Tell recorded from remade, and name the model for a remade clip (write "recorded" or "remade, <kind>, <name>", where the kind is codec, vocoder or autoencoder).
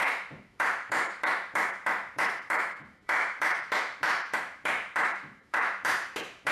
remade, autoencoder, DAC-VAE